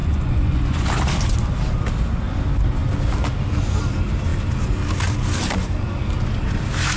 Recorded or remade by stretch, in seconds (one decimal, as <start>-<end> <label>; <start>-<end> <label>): 0.0-0.9 remade; 0.9-7.0 recorded